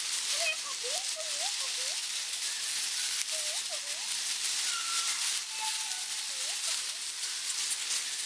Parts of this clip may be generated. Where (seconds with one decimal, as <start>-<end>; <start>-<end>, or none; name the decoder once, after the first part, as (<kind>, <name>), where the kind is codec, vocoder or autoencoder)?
none